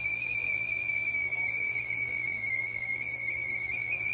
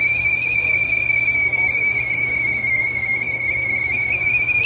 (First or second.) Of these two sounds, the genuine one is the second